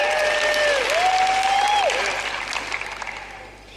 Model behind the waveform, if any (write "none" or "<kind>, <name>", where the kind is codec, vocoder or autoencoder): none